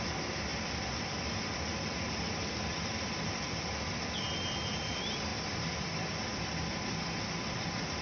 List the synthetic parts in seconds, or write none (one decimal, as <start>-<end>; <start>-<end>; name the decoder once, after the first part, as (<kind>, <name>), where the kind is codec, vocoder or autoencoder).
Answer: none